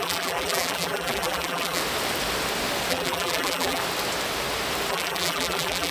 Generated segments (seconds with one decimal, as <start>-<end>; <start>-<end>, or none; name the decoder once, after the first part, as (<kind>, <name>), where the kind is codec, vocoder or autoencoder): 0.0-1.8 (vocoder, BigVGAN v2); 2.9-3.8; 4.9-5.9